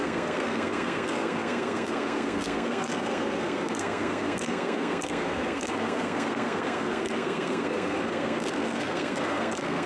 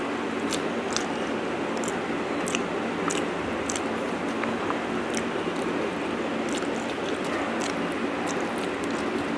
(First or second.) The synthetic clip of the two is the first